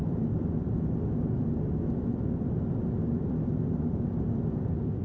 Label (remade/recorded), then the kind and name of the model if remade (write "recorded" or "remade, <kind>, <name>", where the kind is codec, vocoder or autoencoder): recorded